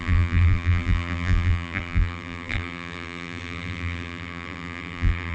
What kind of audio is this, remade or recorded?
remade